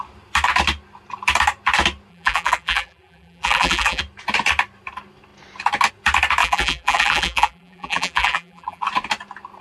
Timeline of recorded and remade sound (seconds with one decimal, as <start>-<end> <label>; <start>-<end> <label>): 0.0-2.1 recorded; 2.1-4.0 remade; 4.0-6.4 recorded; 6.4-8.8 remade; 8.8-9.6 recorded